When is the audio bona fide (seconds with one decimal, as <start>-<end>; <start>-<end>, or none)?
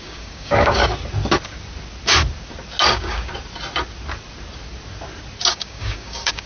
0.8-2.9; 3.3-5.5